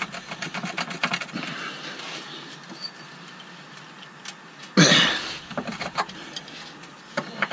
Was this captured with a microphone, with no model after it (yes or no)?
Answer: yes